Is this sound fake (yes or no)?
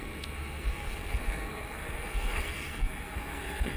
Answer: yes